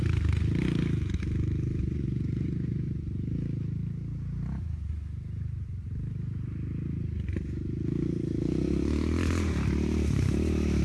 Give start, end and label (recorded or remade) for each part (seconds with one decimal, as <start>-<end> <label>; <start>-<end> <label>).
0.0-1.8 recorded; 1.8-3.0 remade; 3.0-10.8 recorded